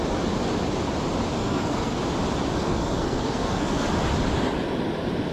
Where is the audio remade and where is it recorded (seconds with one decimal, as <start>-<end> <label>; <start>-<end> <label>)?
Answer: 0.0-1.4 recorded; 1.4-2.0 remade; 2.0-2.7 recorded; 2.7-3.9 remade; 3.9-5.3 recorded